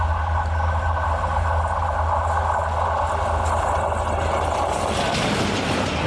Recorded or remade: recorded